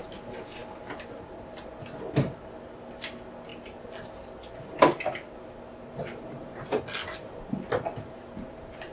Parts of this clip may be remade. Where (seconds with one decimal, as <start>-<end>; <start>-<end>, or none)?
none

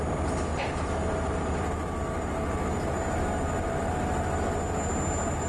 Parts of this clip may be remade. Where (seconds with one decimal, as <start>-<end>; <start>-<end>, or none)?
none

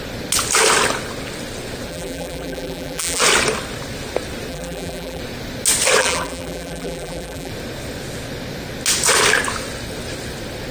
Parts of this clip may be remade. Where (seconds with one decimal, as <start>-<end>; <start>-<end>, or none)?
1.9-3.2; 4.5-5.2; 6.0-7.5